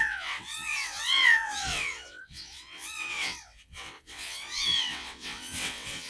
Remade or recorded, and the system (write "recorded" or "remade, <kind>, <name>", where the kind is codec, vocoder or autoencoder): remade, vocoder, WaveNeXt